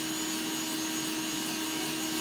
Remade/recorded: recorded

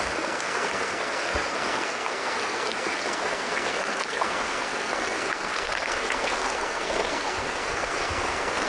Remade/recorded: remade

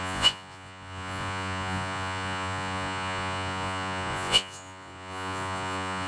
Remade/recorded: remade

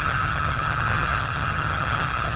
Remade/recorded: remade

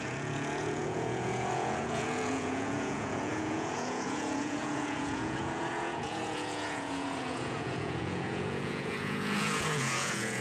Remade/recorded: remade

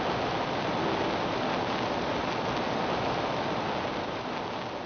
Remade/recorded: recorded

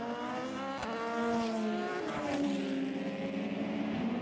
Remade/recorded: recorded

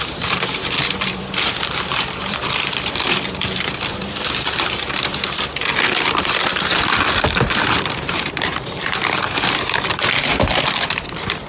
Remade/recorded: remade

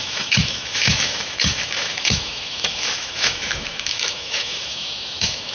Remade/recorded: remade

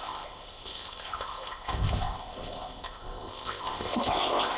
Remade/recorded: remade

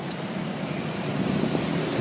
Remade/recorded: recorded